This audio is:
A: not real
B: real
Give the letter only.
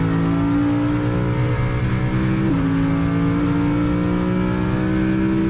B